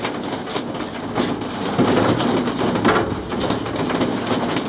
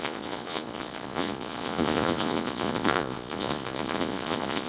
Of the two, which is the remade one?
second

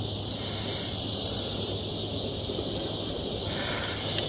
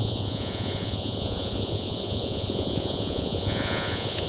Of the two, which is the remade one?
second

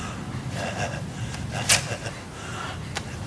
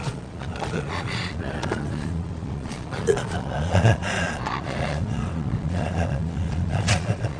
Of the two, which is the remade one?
second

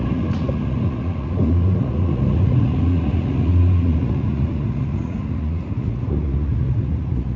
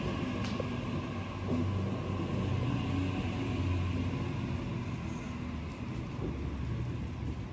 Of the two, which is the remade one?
first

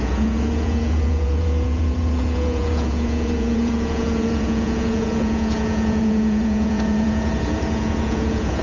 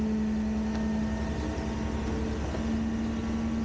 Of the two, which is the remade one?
first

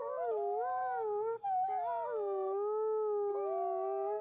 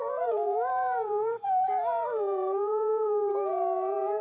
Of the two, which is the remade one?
second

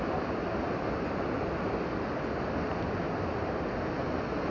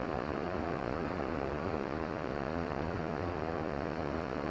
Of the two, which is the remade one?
second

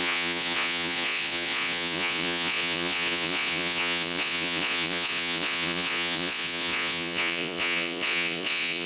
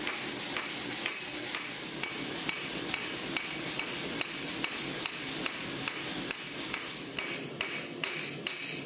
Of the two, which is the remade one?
first